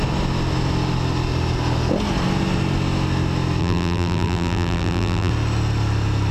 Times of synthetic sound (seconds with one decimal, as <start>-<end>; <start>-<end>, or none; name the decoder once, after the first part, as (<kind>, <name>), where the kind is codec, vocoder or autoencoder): 3.6-5.3 (vocoder, BigVGAN v2)